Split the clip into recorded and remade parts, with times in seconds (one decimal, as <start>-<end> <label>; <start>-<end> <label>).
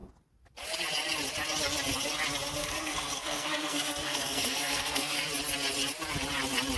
0.0-2.6 recorded; 2.6-5.2 remade; 5.2-6.8 recorded